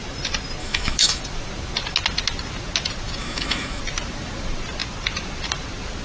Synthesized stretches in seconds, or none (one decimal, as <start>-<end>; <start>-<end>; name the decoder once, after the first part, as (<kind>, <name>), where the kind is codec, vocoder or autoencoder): 0.6-1.2 (autoencoder, DAC-VAE); 3.2-3.8